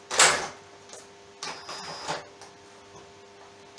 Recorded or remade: recorded